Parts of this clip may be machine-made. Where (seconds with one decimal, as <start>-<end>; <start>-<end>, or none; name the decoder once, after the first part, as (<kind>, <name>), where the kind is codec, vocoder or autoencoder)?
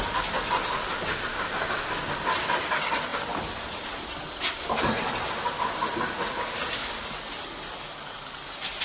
1.3-1.8 (codec, DAC)